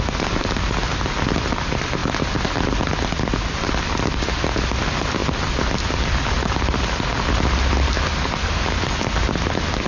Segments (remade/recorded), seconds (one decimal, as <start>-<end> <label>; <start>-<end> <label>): 0.0-9.9 recorded